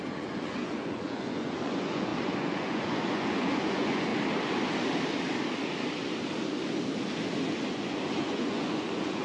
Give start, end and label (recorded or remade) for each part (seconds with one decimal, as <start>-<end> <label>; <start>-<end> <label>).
0.0-4.1 remade; 4.1-7.7 recorded; 7.7-9.2 remade